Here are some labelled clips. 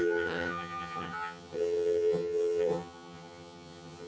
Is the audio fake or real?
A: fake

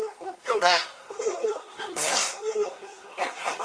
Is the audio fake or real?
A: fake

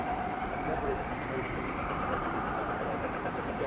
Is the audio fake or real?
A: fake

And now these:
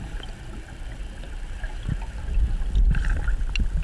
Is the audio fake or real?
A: real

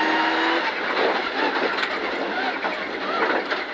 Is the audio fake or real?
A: real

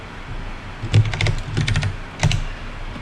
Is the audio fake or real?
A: real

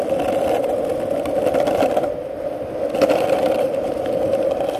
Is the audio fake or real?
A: real